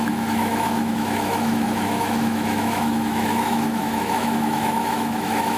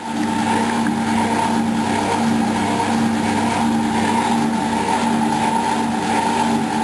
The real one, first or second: second